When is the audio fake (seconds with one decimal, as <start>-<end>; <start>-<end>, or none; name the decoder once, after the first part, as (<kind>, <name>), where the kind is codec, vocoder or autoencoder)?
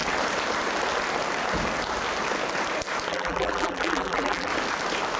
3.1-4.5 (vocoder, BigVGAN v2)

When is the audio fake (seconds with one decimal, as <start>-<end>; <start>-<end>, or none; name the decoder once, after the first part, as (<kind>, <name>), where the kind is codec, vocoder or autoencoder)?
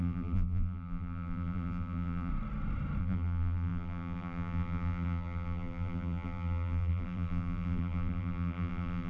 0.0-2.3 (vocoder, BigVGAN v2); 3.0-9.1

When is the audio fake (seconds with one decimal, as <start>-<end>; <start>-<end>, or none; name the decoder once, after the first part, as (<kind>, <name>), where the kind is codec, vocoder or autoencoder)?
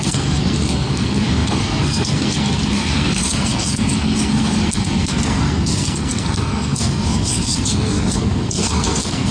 0.0-9.3 (codec, SNAC)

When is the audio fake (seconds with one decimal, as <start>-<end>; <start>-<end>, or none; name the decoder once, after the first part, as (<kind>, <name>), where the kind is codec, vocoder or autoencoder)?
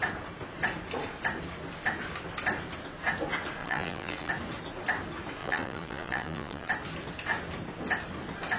3.6-4.3 (vocoder, Vocos); 5.4-6.7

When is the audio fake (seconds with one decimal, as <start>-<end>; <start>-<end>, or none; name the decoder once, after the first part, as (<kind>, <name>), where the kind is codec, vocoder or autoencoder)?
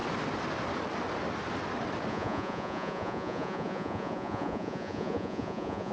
2.1-5.9 (vocoder, Vocos)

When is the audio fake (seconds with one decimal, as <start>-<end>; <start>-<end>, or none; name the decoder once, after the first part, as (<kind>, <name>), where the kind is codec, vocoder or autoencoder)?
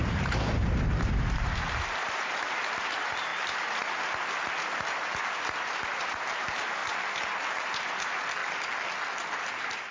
0.0-3.3 (vocoder, BigVGAN v2); 6.0-6.8; 8.0-8.4; 9.5-9.9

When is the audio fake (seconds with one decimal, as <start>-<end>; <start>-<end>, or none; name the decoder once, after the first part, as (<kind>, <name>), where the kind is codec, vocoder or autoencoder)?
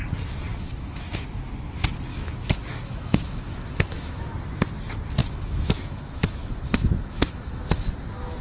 0.5-1.1 (autoencoder, DAC-VAE); 2.1-4.3; 5.2-7.9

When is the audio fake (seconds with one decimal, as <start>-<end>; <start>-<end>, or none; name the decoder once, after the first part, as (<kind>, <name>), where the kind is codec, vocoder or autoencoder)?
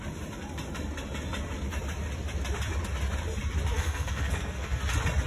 3.7-4.8 (codec, SNAC)